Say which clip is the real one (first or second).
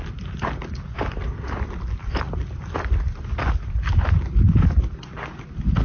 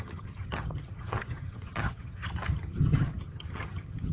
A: first